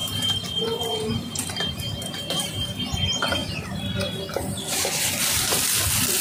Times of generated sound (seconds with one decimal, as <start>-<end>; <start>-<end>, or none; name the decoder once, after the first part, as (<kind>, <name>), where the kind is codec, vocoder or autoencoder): none